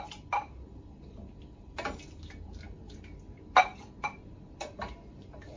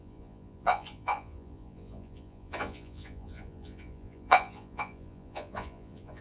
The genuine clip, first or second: first